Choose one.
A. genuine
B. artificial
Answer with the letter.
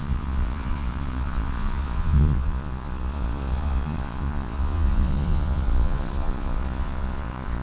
B